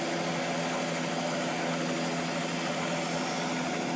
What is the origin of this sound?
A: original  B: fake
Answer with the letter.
A